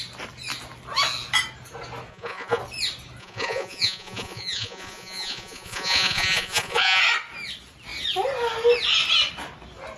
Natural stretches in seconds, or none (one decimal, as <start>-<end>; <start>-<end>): 0.0-2.1; 2.6-3.2; 7.0-10.0